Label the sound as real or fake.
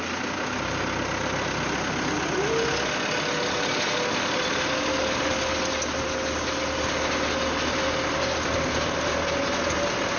real